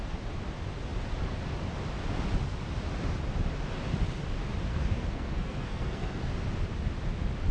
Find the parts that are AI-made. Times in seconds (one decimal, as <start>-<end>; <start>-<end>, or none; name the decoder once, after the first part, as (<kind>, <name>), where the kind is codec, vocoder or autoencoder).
4.7-6.3 (codec, SNAC)